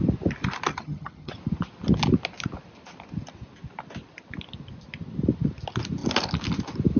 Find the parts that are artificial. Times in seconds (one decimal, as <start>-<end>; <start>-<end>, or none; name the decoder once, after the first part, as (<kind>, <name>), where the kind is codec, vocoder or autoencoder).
0.7-1.3 (vocoder, HiFi-GAN)